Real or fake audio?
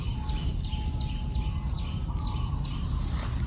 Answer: real